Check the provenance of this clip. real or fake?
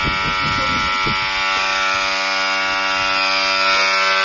real